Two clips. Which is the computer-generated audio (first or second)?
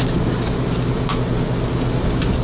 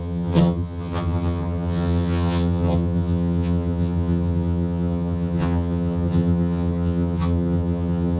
second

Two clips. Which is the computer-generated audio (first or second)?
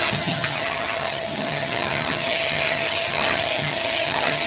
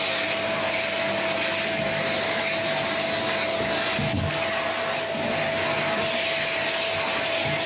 first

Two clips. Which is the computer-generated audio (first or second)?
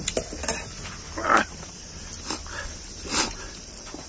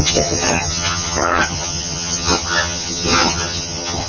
second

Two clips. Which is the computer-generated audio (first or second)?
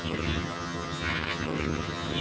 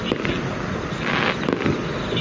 first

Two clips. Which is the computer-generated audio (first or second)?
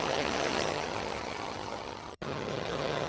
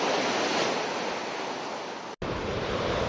first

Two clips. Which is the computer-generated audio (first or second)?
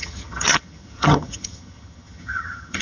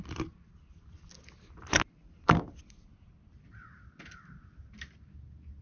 first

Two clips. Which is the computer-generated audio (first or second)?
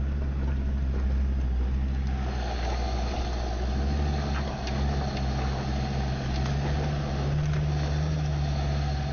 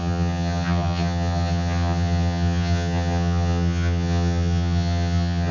second